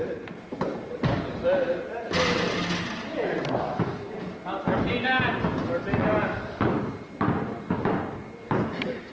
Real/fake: real